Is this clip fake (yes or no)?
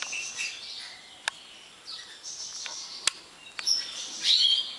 no